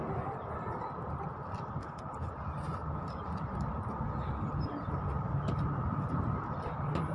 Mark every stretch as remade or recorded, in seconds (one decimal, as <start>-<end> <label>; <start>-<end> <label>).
0.0-1.8 recorded; 1.8-2.3 remade; 2.3-7.1 recorded